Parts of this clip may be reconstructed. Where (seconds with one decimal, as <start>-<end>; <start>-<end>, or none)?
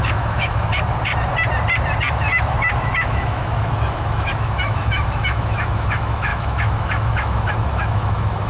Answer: 0.0-0.7; 2.1-8.5